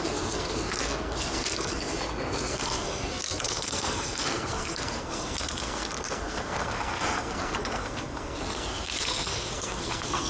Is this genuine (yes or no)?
no